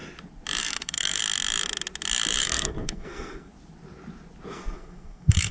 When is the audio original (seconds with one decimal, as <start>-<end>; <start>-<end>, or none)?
0.0-0.6; 1.2-2.4; 3.5-4.5